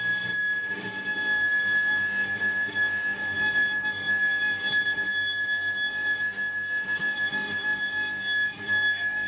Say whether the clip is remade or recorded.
remade